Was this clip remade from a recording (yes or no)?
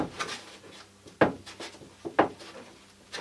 no